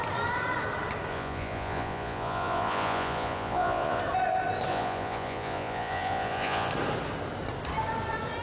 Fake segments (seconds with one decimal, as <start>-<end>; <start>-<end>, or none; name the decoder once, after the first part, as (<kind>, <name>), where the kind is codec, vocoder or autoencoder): 1.1-4.0 (vocoder, Vocos); 4.7-6.7